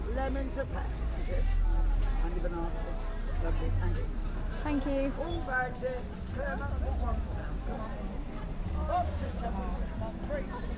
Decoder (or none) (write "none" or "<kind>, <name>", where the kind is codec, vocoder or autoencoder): none